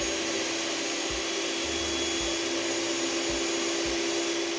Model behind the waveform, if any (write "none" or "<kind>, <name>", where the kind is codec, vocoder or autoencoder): none